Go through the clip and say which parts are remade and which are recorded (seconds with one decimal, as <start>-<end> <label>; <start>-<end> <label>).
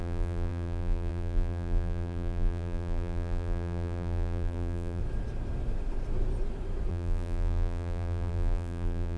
0.0-5.0 remade; 5.0-6.9 recorded; 6.9-9.2 remade